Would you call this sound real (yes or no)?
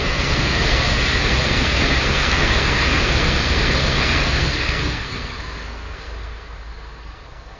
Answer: no